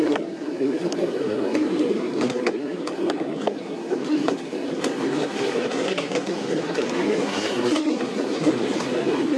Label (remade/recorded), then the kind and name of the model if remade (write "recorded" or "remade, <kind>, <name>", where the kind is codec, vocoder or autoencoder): remade, codec, SNAC